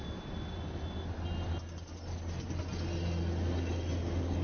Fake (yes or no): no